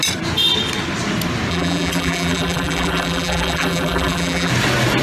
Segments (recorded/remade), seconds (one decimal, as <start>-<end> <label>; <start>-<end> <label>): 0.0-1.5 recorded; 1.5-4.5 remade; 4.5-5.0 recorded